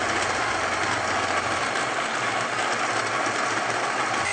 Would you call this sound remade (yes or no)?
no